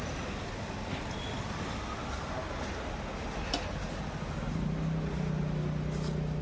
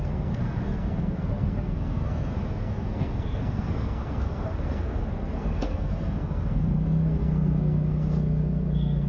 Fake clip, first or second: second